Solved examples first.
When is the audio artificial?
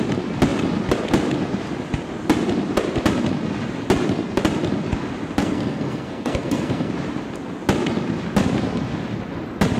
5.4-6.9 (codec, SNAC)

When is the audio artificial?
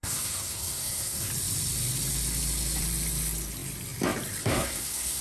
0.0-1.3 (codec, SNAC); 4.4-5.2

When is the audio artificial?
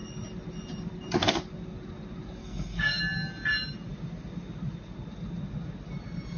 2.4-3.0 (codec, SNAC)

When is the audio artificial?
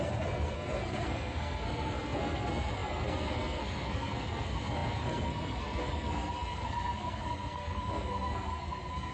0.0-9.1 (codec, SNAC)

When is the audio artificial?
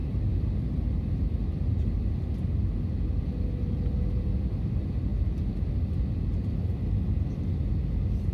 none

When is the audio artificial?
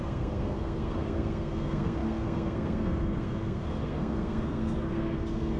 0.0-5.6 (codec, SNAC)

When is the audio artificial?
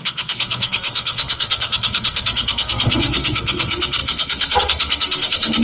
0.0-5.6 (codec, SNAC)